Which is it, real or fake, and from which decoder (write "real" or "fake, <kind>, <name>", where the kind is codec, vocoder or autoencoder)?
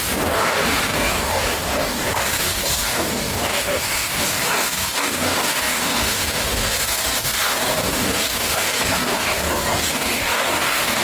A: fake, codec, DAC